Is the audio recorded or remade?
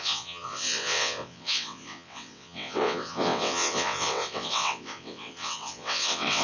remade